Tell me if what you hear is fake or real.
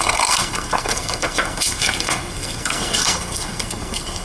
fake